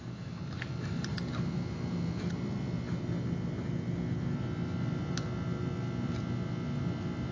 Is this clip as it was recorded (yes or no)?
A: yes